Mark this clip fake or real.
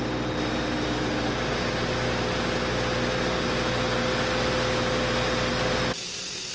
real